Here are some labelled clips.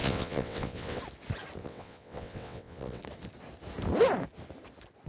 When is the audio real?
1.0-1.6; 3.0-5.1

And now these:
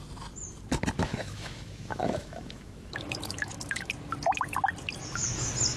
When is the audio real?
0.0-1.0; 3.9-5.8

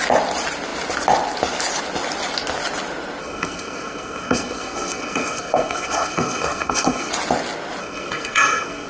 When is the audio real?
0.0-3.2; 7.1-7.8

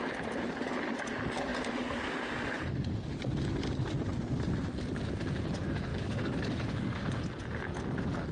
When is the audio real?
0.0-5.9; 7.2-8.3